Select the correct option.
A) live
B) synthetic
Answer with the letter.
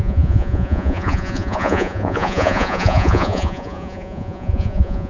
B